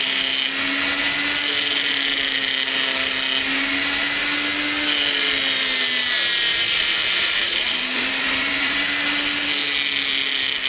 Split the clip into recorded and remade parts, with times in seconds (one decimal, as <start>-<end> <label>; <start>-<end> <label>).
0.0-6.5 recorded; 6.5-8.8 remade; 8.8-10.7 recorded

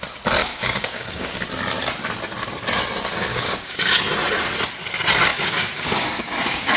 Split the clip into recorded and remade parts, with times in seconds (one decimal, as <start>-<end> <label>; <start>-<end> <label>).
0.0-0.4 recorded; 0.4-1.4 remade; 1.4-3.3 recorded; 3.3-3.9 remade; 3.9-5.3 recorded; 5.3-6.8 remade

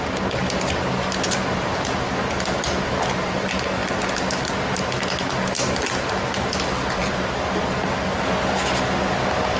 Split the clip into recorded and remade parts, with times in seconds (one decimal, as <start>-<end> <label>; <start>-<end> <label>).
0.0-9.6 recorded